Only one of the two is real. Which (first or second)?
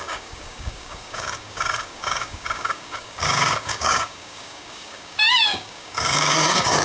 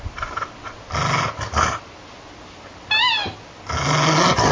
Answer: second